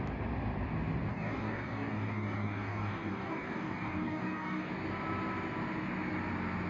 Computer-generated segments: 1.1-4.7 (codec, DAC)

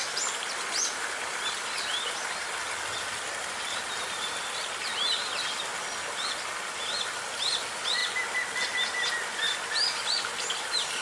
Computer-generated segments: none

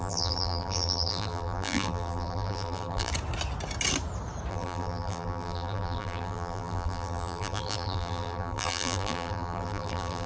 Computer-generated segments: 0.0-3.1 (vocoder, BigVGAN v2); 4.5-10.3